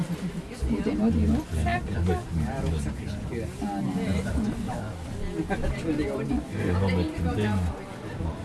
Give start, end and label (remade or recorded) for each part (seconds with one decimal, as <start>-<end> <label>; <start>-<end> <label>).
0.0-8.4 recorded